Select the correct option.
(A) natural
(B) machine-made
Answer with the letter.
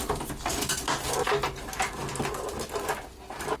A